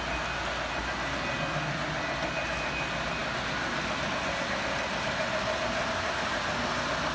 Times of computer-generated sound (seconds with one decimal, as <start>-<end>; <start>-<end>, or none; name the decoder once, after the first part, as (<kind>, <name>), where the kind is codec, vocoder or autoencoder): none